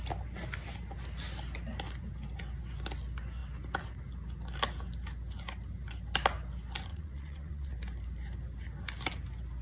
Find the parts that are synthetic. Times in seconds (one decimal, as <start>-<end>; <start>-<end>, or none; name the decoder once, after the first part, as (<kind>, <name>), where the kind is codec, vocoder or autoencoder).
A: 6.9-7.7 (vocoder, WaveNeXt)